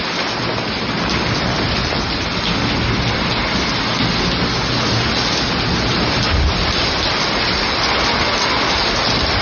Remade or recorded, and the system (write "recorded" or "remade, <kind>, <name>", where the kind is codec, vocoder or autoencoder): recorded